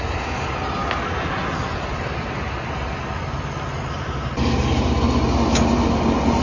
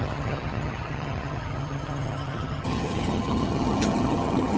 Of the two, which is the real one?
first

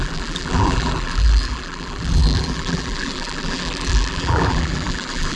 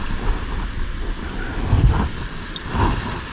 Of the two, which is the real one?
second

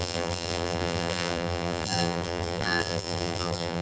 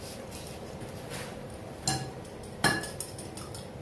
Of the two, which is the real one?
second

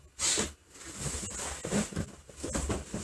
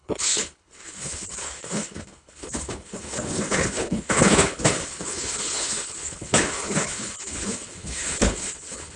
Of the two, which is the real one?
first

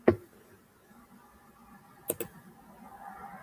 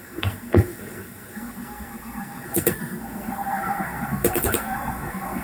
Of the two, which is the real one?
first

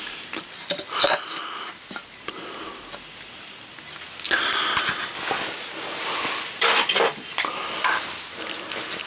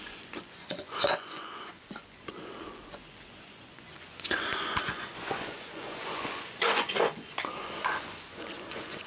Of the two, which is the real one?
first